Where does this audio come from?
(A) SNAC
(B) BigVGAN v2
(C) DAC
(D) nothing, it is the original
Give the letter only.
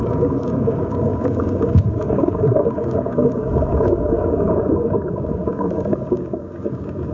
C